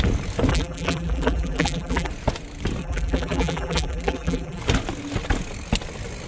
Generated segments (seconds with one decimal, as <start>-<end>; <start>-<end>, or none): 0.5-2.1; 2.8-4.6